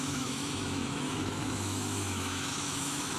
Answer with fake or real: fake